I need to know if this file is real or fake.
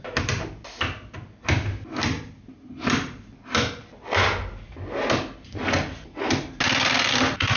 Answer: real